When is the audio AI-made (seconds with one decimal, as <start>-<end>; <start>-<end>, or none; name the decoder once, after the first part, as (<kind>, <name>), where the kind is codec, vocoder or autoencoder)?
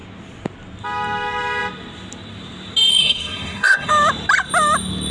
2.9-3.9 (codec, SNAC)